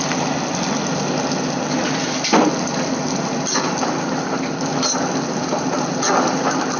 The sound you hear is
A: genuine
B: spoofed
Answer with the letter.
A